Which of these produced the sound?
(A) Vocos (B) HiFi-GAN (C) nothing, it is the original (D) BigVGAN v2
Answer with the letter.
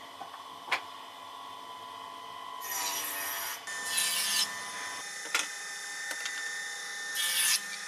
C